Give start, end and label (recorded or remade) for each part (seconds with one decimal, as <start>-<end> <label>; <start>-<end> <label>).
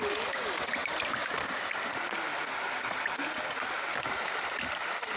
0.0-5.2 recorded